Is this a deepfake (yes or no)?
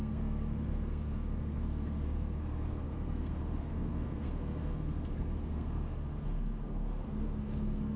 yes